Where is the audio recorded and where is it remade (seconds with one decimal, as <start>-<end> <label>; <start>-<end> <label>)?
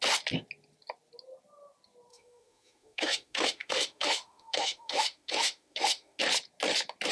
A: 0.0-2.1 recorded; 2.1-6.2 remade; 6.2-7.1 recorded